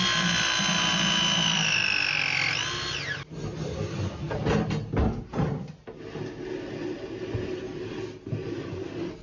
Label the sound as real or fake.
real